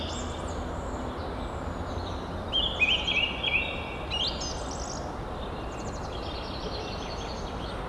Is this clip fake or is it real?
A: real